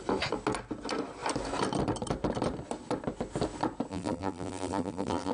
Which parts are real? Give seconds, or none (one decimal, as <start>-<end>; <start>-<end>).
0.0-3.9